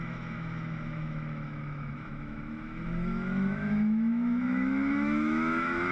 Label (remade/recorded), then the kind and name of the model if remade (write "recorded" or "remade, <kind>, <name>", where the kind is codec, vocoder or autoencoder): remade, autoencoder, DAC-VAE